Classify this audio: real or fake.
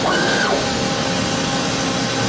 real